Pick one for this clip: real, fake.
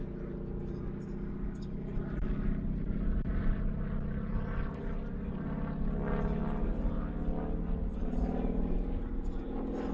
real